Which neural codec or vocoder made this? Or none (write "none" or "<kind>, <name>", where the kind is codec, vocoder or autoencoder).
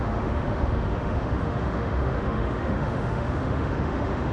autoencoder, DAC-VAE